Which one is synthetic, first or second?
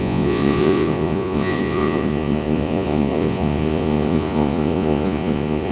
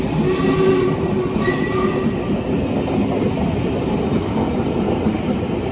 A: first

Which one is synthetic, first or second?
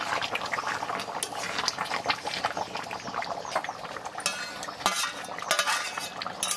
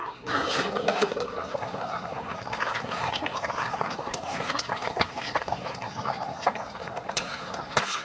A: second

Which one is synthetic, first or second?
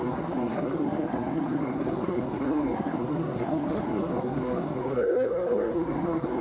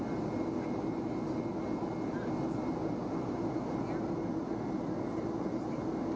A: first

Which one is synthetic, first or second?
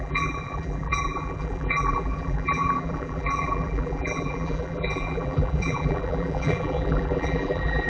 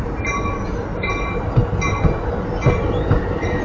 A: first